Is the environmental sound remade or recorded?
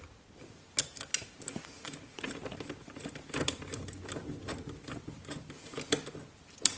recorded